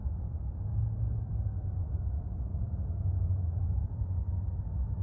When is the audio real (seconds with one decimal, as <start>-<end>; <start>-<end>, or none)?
0.0-2.5; 3.6-5.0